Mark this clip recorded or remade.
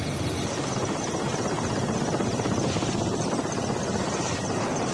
recorded